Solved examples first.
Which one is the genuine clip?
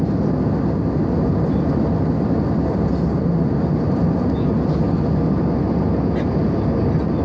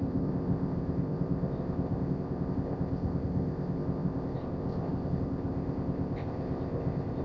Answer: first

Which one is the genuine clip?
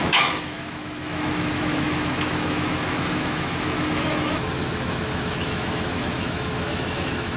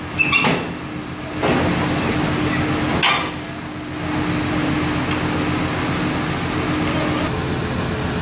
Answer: second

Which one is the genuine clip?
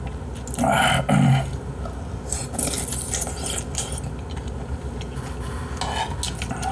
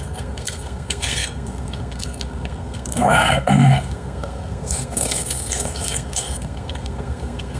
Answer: first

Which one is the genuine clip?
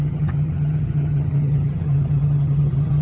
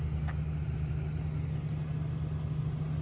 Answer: second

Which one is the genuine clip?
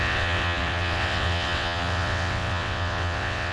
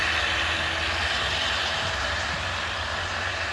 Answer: second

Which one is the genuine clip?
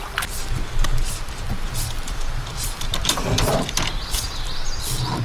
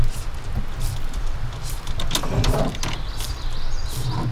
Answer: second